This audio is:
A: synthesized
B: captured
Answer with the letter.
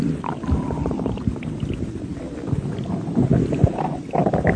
B